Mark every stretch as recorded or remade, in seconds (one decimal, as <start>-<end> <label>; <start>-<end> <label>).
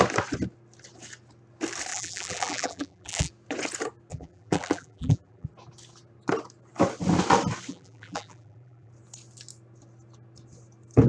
0.0-1.9 recorded; 1.9-3.3 remade; 3.3-4.1 recorded; 4.1-5.5 remade; 5.5-7.7 recorded; 7.7-8.9 remade; 8.9-11.1 recorded